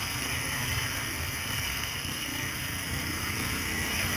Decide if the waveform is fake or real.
fake